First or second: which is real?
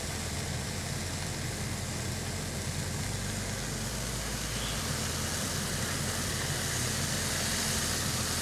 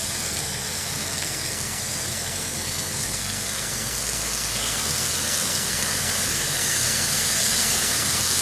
first